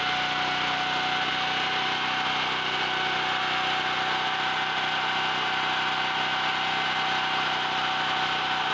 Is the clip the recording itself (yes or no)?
yes